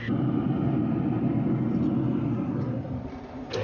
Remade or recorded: recorded